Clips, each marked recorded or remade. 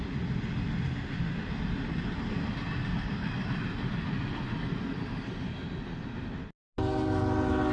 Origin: recorded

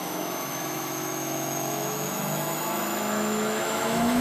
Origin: remade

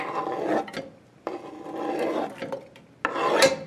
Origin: recorded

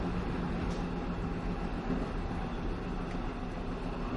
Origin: recorded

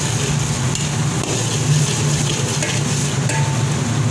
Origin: recorded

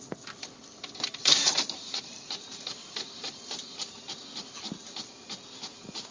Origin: recorded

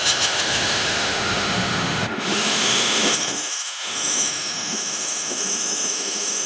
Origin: remade